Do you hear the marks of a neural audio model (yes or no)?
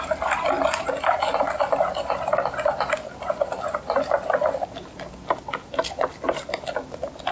no